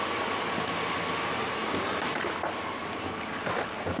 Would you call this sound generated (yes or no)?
no